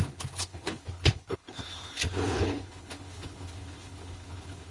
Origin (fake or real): fake